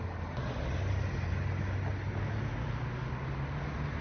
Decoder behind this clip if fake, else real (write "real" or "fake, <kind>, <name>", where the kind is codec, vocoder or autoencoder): real